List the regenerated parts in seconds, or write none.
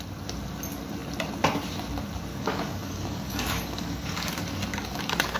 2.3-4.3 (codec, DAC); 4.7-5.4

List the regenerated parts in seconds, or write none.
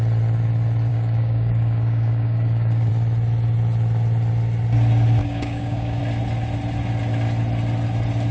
0.9-2.9 (codec, DAC); 5.2-6.0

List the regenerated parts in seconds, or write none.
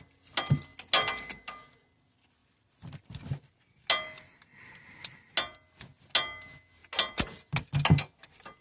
none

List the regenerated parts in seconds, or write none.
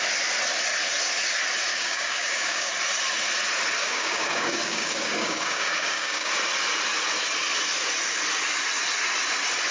1.7-2.7 (codec, DAC); 3.8-6.3